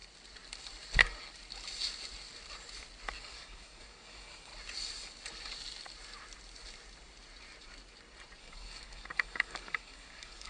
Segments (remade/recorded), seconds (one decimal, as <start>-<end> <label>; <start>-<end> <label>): 0.0-3.2 recorded; 3.2-4.5 remade; 4.5-8.4 recorded; 8.4-10.5 remade